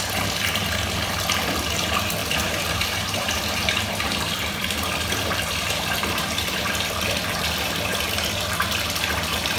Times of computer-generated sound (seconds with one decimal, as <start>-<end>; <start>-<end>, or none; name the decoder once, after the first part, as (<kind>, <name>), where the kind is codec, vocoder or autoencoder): 2.2-7.3 (vocoder, BigVGAN v2)